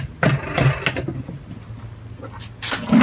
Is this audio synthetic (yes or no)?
no